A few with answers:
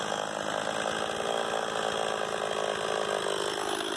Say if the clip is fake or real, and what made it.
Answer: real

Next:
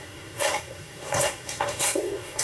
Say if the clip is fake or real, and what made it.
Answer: fake, codec, SNAC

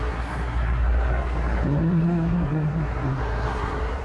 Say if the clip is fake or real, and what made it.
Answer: fake, codec, SNAC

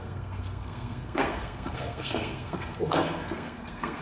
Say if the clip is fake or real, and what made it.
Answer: fake, codec, SNAC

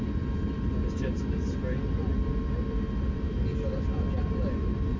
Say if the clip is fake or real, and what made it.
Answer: real